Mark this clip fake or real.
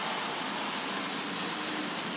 real